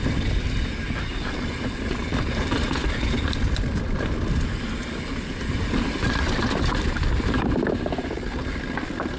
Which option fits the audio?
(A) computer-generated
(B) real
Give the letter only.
A